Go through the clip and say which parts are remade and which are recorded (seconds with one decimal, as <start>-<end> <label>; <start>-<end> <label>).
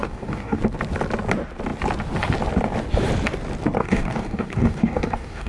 0.0-0.6 remade; 0.6-3.8 recorded; 3.8-5.5 remade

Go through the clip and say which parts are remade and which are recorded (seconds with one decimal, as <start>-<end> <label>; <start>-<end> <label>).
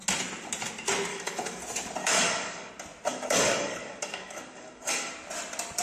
0.0-1.1 recorded; 1.1-1.6 remade; 1.6-2.0 recorded; 2.0-2.7 remade; 2.7-3.1 recorded; 3.1-5.1 remade; 5.1-5.8 recorded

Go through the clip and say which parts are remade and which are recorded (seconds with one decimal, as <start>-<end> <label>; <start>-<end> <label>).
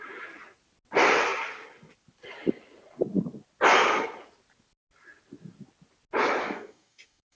0.0-6.4 recorded; 6.4-7.4 remade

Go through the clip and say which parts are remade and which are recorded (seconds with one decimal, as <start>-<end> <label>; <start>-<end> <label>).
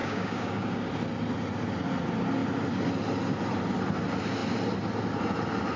0.0-0.9 remade; 0.9-5.8 recorded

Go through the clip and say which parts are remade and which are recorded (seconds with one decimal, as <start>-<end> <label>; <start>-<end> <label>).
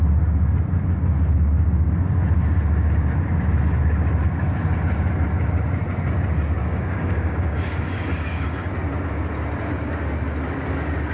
0.0-6.6 recorded; 6.6-8.5 remade; 8.5-11.1 recorded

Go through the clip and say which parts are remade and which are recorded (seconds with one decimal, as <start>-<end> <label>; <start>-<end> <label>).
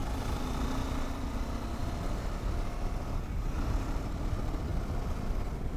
0.0-5.8 recorded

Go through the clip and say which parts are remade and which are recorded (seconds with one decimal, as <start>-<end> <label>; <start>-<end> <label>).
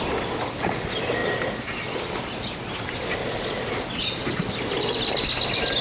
0.0-5.8 recorded